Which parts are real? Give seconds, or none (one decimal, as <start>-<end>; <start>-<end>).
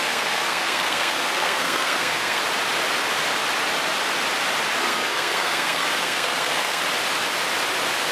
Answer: 2.4-4.8; 6.8-8.1